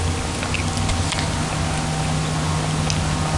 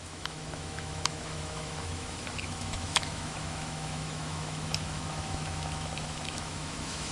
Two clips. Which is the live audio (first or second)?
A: first